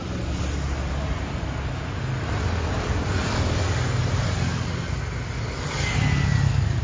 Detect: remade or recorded recorded